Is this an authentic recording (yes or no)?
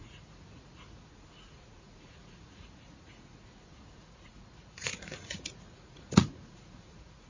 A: no